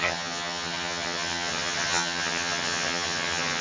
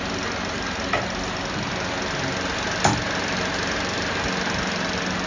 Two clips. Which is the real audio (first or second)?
second